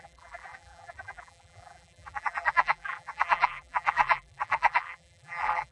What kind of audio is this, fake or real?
fake